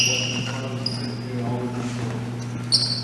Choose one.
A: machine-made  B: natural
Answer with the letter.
B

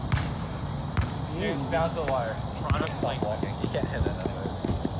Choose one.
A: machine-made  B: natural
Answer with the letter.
B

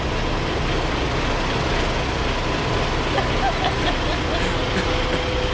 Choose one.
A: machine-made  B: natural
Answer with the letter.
B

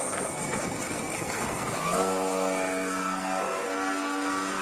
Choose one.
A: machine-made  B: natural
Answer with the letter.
A